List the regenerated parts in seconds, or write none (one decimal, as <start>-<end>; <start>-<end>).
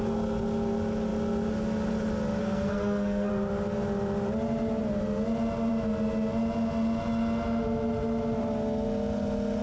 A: 2.4-3.3